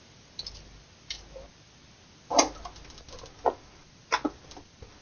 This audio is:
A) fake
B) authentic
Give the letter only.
B